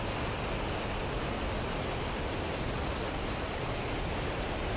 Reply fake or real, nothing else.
real